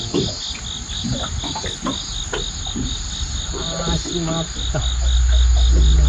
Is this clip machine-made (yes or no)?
no